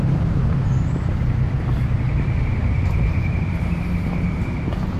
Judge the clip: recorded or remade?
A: recorded